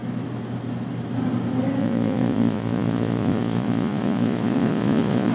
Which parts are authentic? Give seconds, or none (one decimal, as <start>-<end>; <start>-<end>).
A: 0.0-1.8

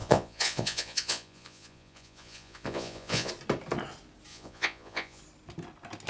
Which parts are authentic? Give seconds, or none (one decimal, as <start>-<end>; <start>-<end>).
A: 3.3-4.3; 5.2-6.1

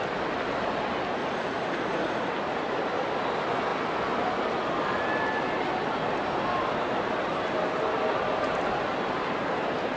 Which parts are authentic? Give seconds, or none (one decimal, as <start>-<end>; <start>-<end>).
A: 0.0-1.2; 2.3-10.0